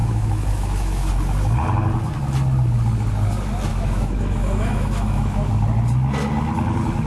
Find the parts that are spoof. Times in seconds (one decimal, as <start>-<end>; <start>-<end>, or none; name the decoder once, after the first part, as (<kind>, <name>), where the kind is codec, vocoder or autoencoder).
0.0-1.1 (autoencoder, DAC-VAE); 3.7-5.5